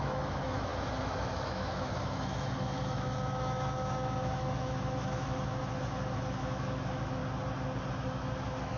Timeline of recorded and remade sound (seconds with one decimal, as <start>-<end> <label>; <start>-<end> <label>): 0.0-7.2 remade; 7.2-7.9 recorded; 7.9-8.8 remade